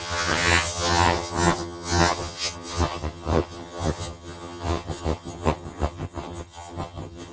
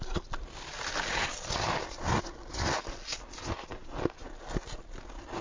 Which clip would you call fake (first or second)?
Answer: first